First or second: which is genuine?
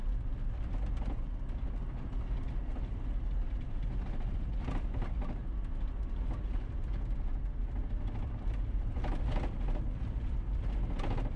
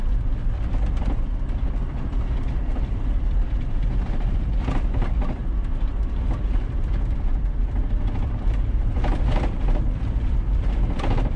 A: first